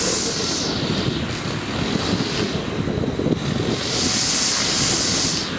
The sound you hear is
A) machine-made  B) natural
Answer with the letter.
B